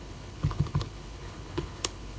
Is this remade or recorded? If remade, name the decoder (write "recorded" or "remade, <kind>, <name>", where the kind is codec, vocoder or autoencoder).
remade, codec, HILCodec